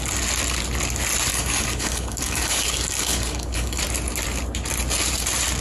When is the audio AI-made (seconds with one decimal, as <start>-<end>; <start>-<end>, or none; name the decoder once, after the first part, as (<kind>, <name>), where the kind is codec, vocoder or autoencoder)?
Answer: 1.3-3.8 (codec, DAC)